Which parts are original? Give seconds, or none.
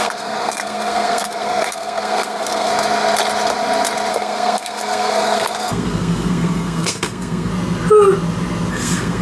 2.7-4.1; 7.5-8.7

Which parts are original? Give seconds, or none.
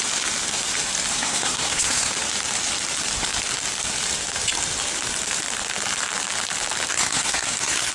0.0-1.1; 2.1-6.9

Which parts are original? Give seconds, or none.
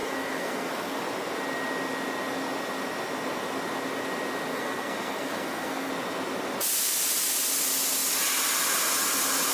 1.0-4.5; 5.9-9.5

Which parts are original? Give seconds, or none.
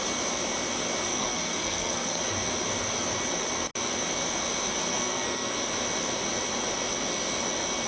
0.0-1.1; 2.2-4.9; 5.5-7.9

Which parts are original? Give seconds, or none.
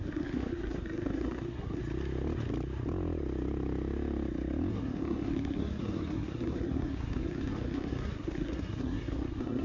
1.8-4.7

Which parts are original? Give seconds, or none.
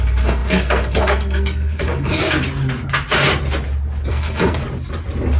2.2-4.1; 4.6-5.4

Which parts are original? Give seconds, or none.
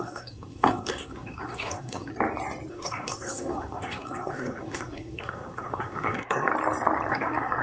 2.1-2.7; 6.5-7.1